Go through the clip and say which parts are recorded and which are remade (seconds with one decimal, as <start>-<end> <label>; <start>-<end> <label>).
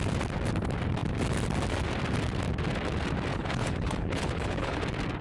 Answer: 0.0-3.3 recorded; 3.3-4.8 remade; 4.8-5.2 recorded